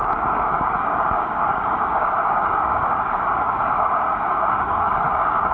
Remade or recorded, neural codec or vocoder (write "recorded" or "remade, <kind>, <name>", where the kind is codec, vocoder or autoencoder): remade, codec, DAC